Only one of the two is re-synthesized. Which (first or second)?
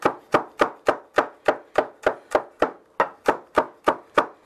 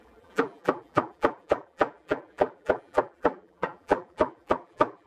second